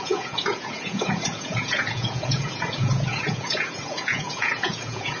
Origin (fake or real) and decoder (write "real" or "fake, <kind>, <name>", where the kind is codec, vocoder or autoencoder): fake, vocoder, Vocos